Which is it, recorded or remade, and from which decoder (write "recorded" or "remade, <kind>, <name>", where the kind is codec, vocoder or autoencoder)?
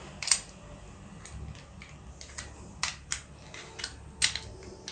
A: recorded